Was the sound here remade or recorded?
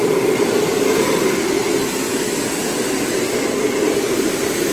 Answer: recorded